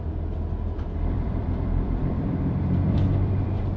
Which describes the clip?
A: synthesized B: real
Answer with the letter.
A